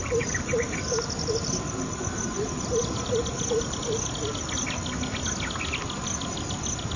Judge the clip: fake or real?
real